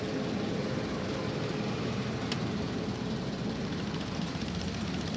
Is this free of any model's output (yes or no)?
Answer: no